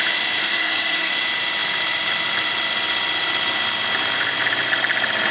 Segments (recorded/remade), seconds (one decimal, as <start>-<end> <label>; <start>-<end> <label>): 0.0-0.4 recorded; 0.4-1.1 remade; 1.1-5.3 recorded